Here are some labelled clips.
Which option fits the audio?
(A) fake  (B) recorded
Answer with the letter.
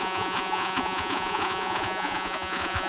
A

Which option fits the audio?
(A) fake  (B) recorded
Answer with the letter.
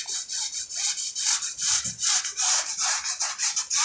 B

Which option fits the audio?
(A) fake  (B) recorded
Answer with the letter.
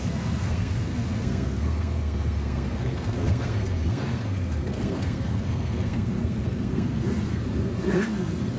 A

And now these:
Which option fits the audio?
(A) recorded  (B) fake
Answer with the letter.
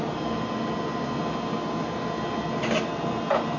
A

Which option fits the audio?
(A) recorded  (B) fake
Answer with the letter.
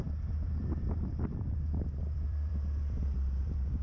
B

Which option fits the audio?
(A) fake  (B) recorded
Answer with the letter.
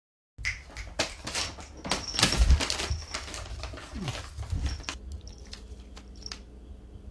B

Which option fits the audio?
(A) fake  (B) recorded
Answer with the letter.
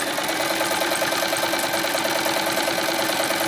B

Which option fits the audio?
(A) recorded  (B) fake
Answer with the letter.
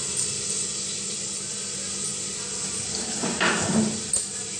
A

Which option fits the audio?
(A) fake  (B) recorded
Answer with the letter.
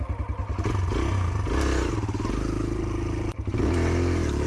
B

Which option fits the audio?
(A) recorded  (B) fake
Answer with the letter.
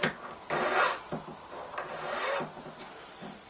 A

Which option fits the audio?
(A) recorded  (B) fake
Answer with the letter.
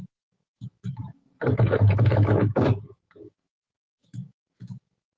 B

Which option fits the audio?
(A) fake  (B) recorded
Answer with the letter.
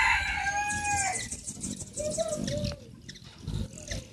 B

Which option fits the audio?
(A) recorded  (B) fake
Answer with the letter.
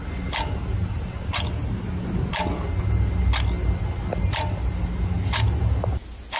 A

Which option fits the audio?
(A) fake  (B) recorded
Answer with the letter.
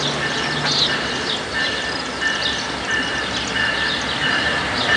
B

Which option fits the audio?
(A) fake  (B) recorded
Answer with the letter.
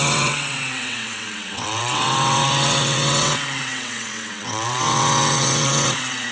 A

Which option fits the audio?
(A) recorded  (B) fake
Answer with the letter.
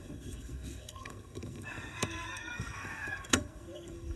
B